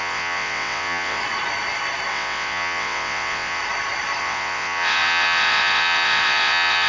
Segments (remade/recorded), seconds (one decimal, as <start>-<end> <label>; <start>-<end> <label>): 0.0-1.2 remade; 1.2-2.1 recorded; 2.1-3.6 remade; 3.6-4.2 recorded; 4.2-6.9 remade